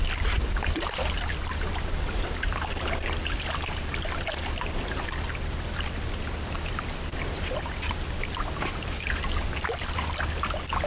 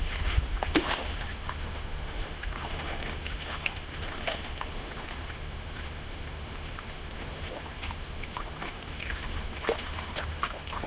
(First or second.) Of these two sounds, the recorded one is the first